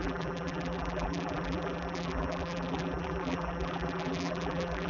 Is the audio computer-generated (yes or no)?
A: yes